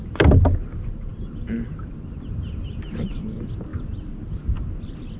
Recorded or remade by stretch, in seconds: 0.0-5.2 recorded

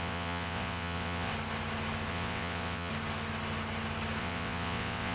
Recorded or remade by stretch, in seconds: 0.0-1.3 remade; 1.3-2.1 recorded; 2.1-2.9 remade; 2.9-4.2 recorded; 4.2-5.1 remade

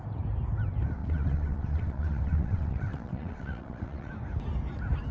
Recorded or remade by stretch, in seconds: 0.0-1.0 recorded; 1.0-4.1 remade; 4.1-5.1 recorded

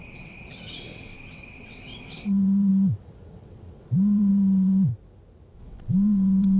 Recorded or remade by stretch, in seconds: 0.0-4.9 remade; 4.9-5.6 recorded; 5.6-6.6 remade

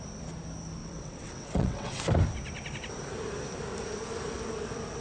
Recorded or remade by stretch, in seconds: 0.0-0.8 recorded; 0.8-2.0 remade; 2.0-5.0 recorded